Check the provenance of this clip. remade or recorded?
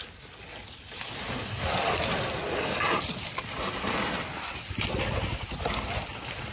recorded